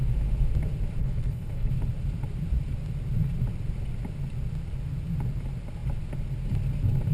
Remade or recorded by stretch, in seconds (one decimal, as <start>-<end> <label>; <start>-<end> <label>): 0.0-1.0 recorded; 1.0-1.7 remade; 1.7-7.1 recorded